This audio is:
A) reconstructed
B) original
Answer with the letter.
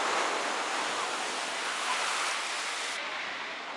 B